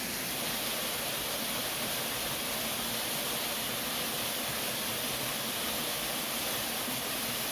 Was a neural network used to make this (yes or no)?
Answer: no